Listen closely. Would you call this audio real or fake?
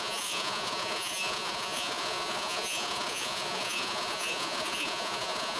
fake